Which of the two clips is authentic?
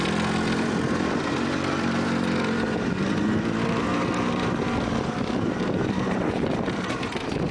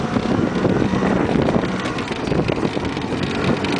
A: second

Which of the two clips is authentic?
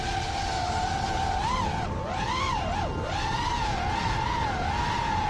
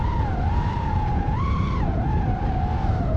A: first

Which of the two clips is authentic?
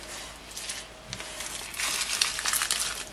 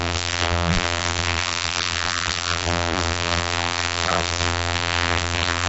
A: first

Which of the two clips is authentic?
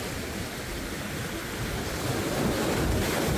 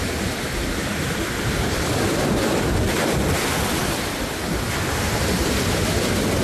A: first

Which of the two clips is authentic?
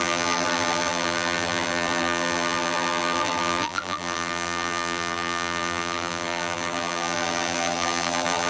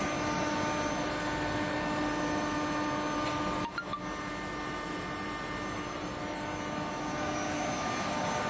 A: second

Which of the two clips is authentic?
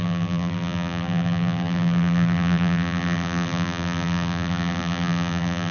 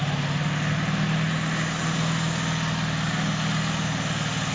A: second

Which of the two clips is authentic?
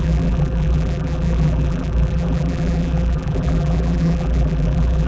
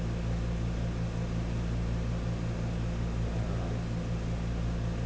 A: second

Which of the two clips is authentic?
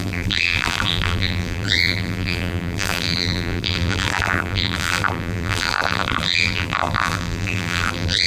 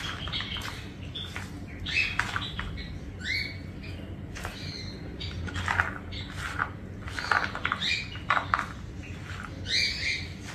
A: second